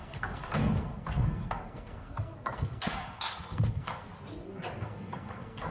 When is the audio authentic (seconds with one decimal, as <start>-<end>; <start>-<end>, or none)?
4.1-4.8